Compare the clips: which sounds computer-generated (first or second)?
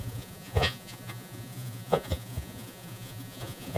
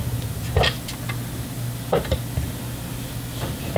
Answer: first